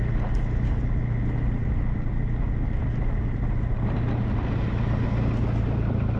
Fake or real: real